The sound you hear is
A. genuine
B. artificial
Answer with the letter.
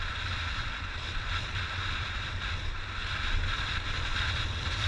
A